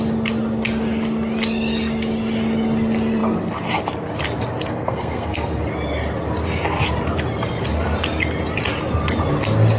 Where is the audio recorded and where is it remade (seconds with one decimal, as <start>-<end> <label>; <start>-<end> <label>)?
0.0-4.7 recorded; 4.7-5.6 remade; 5.6-9.8 recorded